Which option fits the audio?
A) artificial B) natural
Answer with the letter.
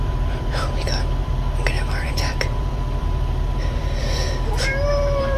A